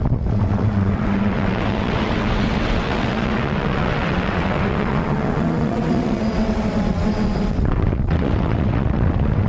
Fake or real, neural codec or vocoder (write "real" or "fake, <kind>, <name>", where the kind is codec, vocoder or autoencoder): fake, vocoder, WaveNeXt